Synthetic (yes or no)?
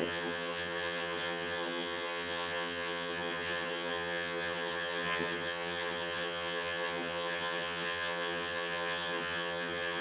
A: yes